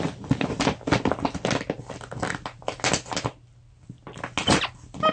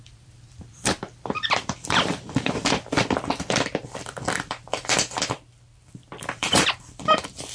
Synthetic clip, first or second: second